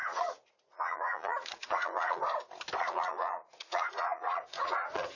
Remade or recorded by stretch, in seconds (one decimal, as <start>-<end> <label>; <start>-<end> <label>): 0.0-2.2 remade; 2.2-2.8 recorded; 2.8-5.2 remade